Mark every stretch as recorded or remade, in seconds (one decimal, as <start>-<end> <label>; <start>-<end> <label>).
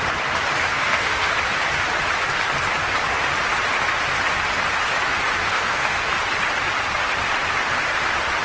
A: 0.0-0.7 recorded; 0.7-1.3 remade; 1.3-5.4 recorded; 5.4-6.1 remade; 6.1-8.4 recorded